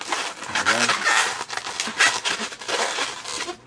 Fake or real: real